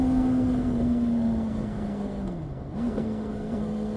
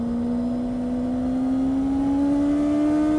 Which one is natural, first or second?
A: second